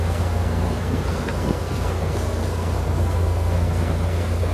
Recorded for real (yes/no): no